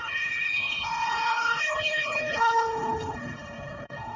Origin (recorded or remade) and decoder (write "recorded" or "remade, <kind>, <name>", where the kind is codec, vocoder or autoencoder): remade, codec, HILCodec